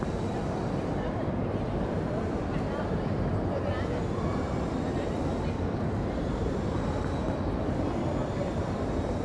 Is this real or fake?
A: real